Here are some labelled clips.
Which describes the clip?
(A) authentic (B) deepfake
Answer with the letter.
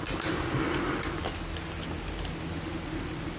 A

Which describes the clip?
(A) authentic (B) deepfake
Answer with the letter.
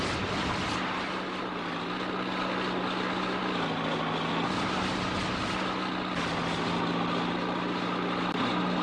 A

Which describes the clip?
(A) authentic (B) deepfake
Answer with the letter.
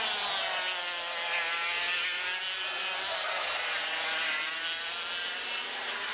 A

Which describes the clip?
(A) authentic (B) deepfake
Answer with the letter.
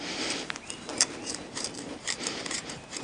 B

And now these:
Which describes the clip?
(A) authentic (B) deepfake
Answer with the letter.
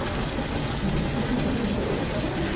A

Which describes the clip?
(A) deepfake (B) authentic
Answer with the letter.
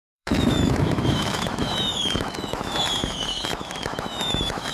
A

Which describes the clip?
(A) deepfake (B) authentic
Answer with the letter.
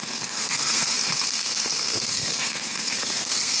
A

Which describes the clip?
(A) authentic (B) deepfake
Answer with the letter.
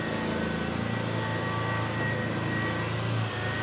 A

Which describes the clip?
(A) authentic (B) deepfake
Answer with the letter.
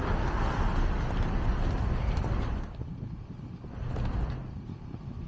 A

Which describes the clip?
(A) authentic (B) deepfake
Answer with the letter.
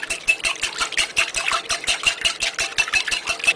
A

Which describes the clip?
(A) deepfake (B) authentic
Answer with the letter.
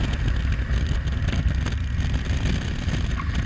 B